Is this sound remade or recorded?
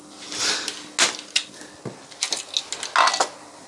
recorded